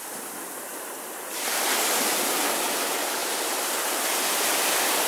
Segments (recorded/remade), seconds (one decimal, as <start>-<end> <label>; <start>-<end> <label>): 0.0-0.7 recorded; 0.7-2.4 remade; 2.4-3.2 recorded; 3.2-5.1 remade